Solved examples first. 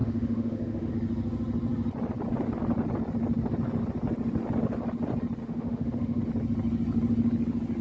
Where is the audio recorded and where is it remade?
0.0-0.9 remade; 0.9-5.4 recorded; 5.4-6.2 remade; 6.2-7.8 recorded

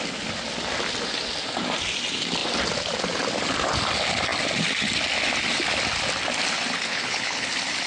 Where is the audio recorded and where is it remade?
0.0-6.9 recorded; 6.9-7.5 remade; 7.5-7.9 recorded

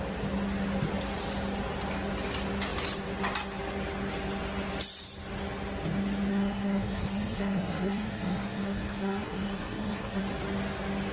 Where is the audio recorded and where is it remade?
0.0-6.3 recorded; 6.3-10.2 remade; 10.2-11.1 recorded

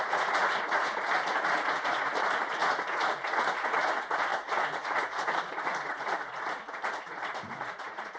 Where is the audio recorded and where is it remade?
0.0-8.2 remade

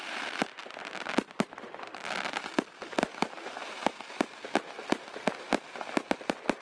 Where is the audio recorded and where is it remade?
0.0-6.6 remade